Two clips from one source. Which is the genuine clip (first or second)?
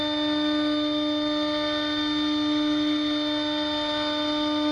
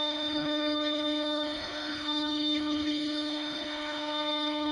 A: first